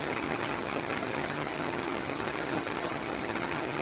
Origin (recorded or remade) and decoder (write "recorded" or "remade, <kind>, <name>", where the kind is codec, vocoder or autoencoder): remade, vocoder, HiFi-GAN